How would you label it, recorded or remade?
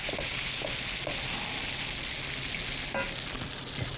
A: recorded